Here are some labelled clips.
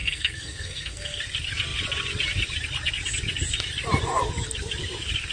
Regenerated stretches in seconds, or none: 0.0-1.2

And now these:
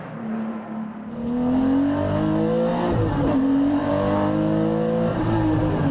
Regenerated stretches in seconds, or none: 2.7-3.9; 5.1-5.9

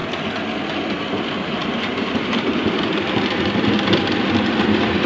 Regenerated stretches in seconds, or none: 1.6-5.1

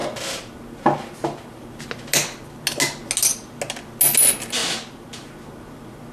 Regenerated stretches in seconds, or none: none